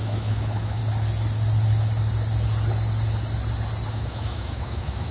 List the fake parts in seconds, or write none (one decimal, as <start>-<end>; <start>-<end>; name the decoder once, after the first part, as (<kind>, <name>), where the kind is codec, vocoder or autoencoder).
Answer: 0.0-0.8 (autoencoder, DAC-VAE); 3.9-5.1